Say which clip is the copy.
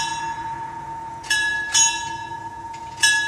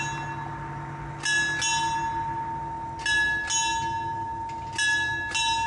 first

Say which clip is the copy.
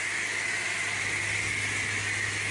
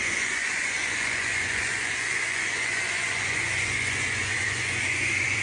second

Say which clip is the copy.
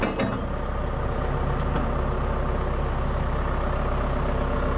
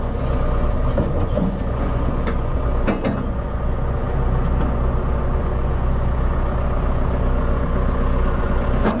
second